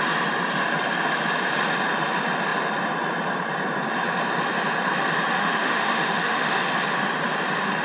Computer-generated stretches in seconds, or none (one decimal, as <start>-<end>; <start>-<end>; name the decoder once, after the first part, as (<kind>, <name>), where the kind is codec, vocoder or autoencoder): 5.4-6.5 (autoencoder, DAC-VAE)